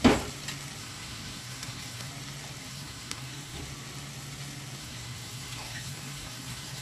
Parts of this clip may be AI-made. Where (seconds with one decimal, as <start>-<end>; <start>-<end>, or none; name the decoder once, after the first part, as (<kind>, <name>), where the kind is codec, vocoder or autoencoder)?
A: 0.8-2.1 (codec, SNAC); 2.6-3.6; 4.8-6.8